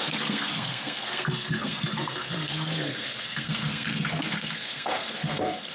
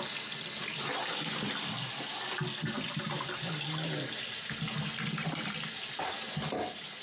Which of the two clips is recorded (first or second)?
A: second